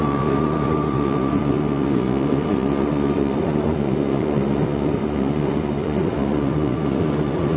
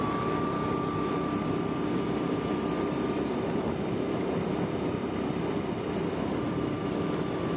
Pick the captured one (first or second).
second